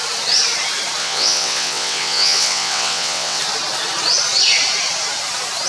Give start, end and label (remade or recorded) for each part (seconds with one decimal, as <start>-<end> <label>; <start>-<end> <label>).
0.0-1.0 recorded; 1.0-3.4 remade; 3.4-5.7 recorded